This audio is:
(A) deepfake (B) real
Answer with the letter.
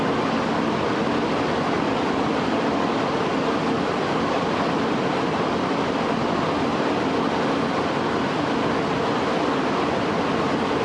B